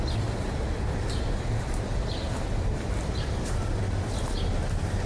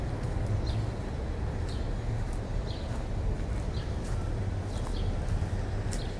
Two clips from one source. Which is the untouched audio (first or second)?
second